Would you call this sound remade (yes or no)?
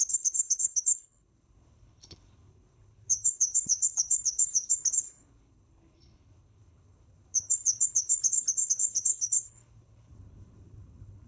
yes